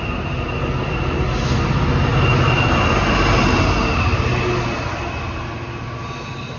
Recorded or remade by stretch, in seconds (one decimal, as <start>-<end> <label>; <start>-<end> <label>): 0.0-6.6 recorded